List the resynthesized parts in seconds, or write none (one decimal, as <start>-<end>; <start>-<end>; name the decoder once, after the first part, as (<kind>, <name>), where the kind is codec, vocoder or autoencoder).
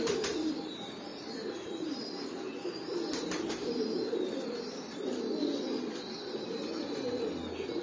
1.1-2.0 (vocoder, BigVGAN v2)